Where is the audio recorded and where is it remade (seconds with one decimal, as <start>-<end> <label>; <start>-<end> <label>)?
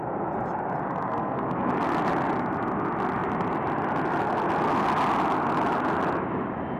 0.0-1.1 recorded; 1.1-1.7 remade; 1.7-6.8 recorded